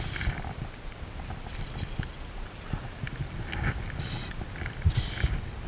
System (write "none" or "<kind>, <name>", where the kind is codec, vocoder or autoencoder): none